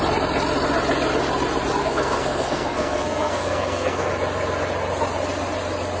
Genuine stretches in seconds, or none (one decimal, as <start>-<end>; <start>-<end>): 0.0-1.8; 4.1-6.0